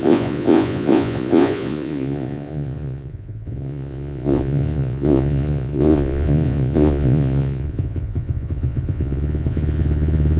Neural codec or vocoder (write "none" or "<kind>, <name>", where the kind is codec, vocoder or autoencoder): vocoder, Vocos